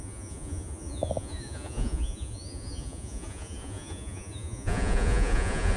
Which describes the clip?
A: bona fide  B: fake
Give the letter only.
B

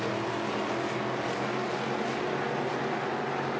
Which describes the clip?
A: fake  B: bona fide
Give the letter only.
B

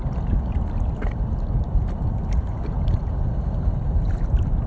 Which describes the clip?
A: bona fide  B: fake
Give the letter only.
A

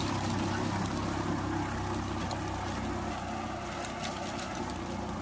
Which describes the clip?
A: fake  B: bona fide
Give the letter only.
B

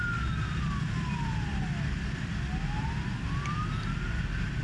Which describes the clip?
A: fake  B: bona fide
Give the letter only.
B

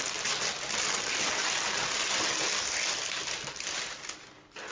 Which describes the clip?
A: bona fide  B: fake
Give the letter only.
A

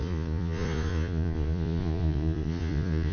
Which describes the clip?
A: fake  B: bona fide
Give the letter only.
A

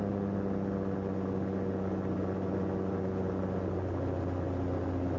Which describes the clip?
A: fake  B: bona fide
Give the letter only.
B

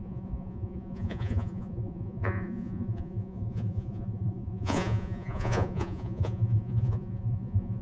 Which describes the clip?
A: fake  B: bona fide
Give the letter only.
A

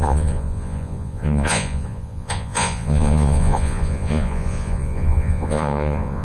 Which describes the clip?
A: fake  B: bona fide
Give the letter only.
A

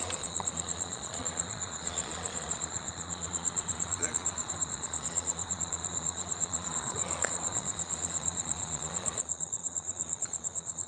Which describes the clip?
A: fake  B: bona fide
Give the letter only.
A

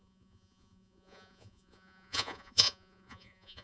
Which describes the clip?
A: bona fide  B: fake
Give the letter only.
B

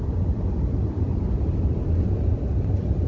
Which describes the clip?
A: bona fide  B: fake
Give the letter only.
A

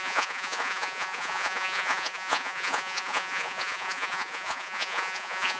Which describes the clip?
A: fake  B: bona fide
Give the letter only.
A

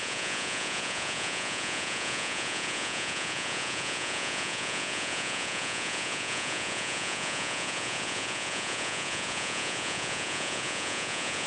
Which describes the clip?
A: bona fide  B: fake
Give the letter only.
B